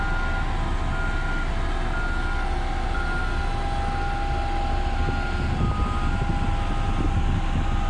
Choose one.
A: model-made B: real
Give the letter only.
B